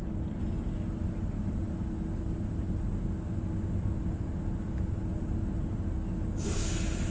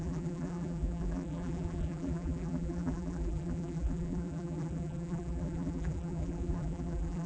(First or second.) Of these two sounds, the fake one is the second